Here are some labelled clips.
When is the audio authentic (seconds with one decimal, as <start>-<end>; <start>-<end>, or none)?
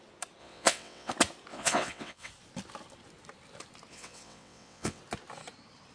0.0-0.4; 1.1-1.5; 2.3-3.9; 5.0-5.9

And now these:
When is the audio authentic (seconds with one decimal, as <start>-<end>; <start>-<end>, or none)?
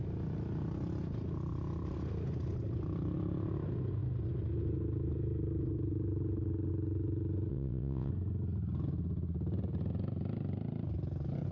0.0-7.5; 8.1-11.5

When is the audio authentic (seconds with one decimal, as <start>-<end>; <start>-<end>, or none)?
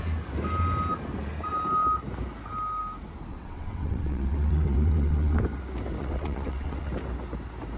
0.0-3.3; 5.4-6.0; 6.9-7.8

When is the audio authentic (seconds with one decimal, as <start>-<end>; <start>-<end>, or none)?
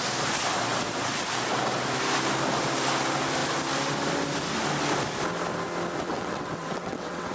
0.0-6.1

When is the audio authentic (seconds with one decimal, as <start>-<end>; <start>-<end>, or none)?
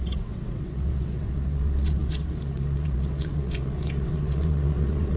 none